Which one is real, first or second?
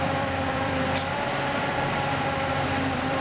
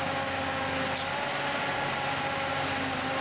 second